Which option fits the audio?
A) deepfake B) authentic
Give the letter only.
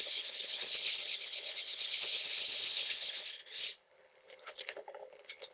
A